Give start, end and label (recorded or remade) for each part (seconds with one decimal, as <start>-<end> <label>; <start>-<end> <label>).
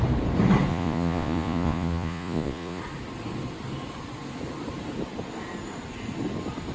0.0-0.7 recorded; 0.7-2.8 remade; 2.8-6.7 recorded